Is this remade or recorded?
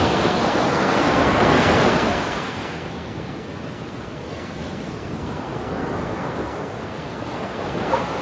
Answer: remade